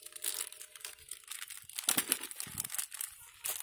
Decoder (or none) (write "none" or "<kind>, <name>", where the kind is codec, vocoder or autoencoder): none